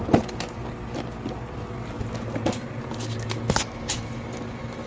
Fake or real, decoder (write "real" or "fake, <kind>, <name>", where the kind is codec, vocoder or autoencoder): real